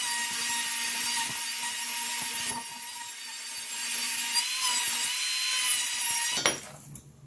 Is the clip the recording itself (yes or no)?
yes